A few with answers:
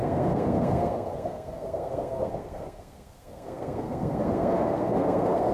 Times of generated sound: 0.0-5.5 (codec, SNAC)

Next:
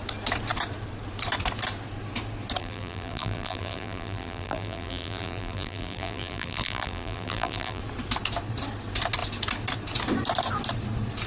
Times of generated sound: 2.6-7.8 (vocoder, BigVGAN v2)

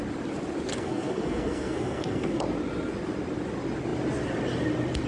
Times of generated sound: 0.7-2.4 (codec, SNAC)

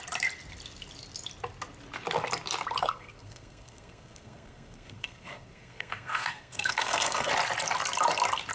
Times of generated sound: 2.8-7.3 (codec, SNAC)

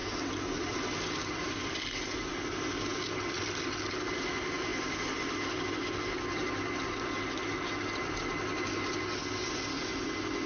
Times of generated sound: 0.0-1.8 (vocoder, BigVGAN v2)

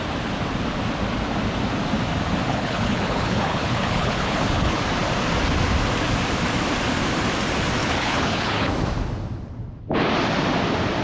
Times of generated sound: 2.5-4.8 (codec, HILCodec); 7.8-8.7

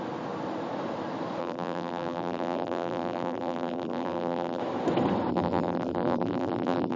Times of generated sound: 1.4-4.6 (vocoder, BigVGAN v2); 5.3-7.0